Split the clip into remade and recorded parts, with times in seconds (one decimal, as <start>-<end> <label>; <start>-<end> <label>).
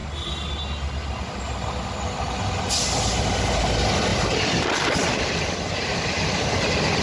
0.0-4.1 recorded; 4.1-6.0 remade; 6.0-7.0 recorded